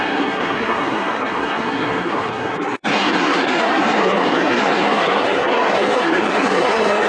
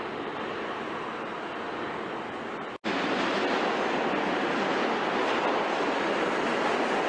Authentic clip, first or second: second